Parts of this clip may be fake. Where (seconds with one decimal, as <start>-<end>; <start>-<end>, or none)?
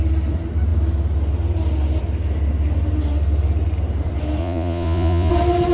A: 4.4-5.3